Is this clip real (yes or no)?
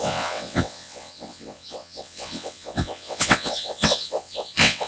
no